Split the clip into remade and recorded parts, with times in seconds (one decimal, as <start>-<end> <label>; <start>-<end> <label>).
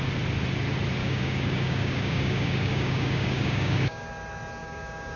0.0-1.0 recorded; 1.0-4.1 remade; 4.1-4.6 recorded; 4.6-5.2 remade